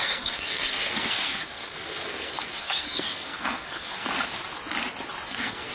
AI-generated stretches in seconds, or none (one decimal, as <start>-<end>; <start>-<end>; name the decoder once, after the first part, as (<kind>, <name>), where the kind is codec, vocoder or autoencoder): 0.0-4.1 (codec, SNAC); 5.3-5.7